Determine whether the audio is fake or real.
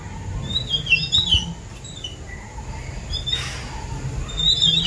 real